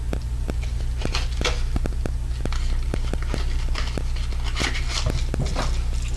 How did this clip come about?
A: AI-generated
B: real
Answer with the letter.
B